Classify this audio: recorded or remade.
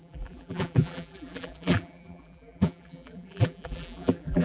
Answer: remade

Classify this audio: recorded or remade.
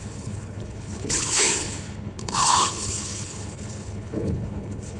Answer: remade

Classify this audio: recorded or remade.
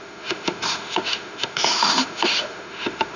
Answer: remade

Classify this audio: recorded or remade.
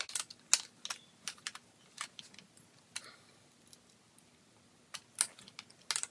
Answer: recorded